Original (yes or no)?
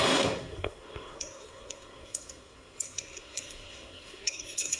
no